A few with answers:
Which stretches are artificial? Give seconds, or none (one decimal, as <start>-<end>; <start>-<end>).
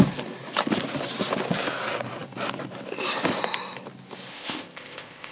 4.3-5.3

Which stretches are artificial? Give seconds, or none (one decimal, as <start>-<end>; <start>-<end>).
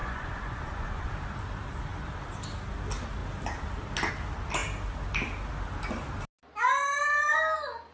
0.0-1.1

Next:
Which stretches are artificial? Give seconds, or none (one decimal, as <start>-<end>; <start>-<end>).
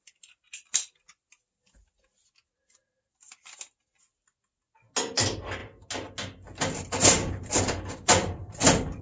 0.0-1.1; 5.1-5.6; 7.9-9.0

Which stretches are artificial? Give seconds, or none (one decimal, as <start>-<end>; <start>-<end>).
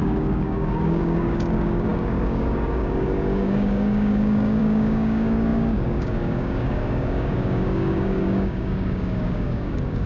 0.0-10.1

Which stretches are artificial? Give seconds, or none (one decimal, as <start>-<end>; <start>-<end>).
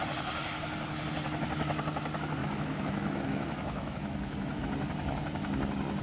2.4-4.6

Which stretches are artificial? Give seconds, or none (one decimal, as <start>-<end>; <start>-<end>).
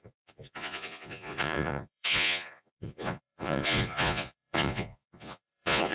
0.0-5.9